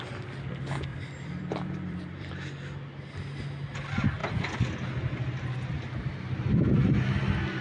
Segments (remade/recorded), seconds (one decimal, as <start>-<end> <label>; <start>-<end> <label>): 0.0-0.9 recorded; 0.9-2.3 remade; 2.3-7.6 recorded